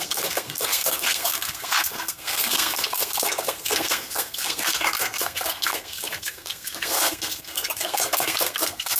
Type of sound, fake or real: fake